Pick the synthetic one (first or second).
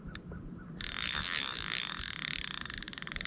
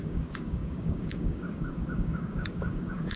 second